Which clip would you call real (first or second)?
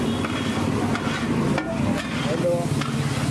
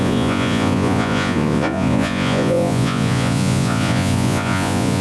first